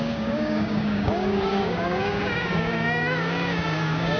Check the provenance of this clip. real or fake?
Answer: fake